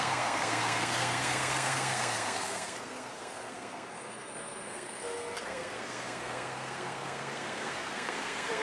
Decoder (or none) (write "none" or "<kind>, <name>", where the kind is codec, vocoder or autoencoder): codec, SNAC